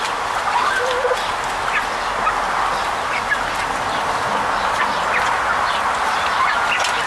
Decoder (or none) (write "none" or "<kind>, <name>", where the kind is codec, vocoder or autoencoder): none